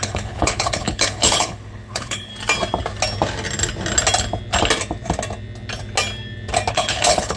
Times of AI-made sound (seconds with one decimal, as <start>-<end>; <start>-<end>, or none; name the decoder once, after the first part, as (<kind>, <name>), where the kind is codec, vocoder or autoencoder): 0.0-2.3 (codec, HILCodec); 6.7-7.4